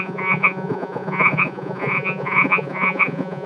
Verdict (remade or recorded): remade